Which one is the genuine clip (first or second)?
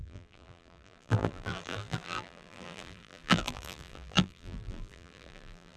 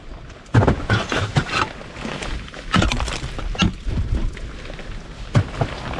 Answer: second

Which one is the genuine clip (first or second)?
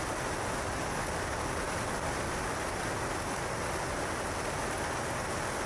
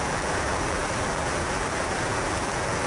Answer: first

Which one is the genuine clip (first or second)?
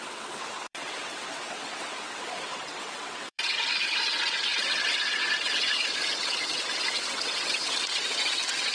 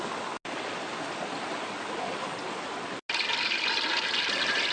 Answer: second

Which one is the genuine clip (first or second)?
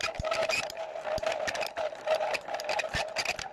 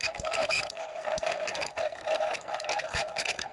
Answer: first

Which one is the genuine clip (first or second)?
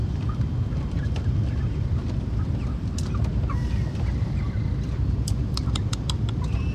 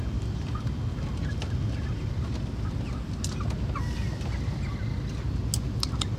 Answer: second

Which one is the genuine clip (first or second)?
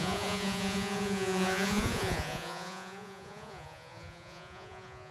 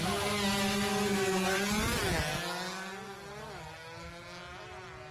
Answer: second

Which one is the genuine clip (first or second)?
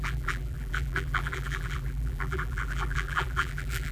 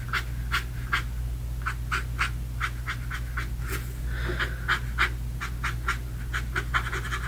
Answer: second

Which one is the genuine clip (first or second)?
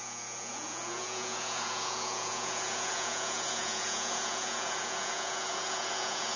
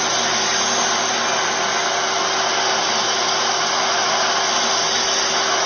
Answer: second